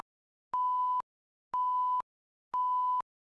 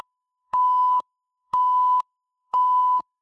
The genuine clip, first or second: first